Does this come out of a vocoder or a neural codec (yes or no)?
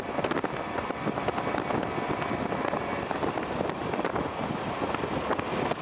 no